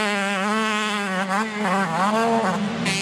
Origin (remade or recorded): recorded